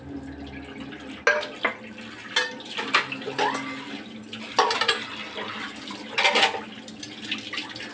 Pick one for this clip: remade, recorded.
recorded